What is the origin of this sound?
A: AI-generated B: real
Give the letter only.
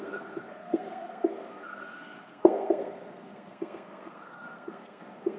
A